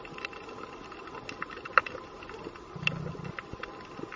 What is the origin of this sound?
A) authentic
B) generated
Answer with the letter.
A